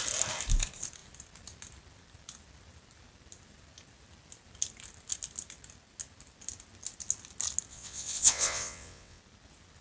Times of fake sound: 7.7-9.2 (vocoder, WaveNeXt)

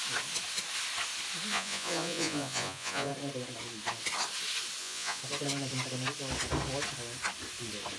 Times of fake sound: 1.5-3.1 (vocoder, Vocos); 4.8-5.2

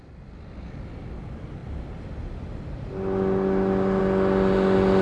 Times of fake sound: none